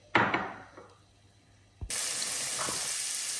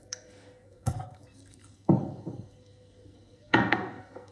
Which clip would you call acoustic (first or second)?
first